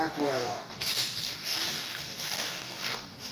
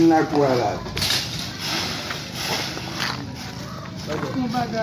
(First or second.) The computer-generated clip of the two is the first